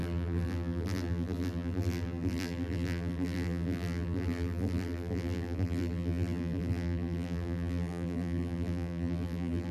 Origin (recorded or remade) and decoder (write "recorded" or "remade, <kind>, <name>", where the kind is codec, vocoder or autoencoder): remade, vocoder, BigVGAN v2